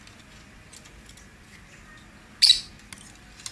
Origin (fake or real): real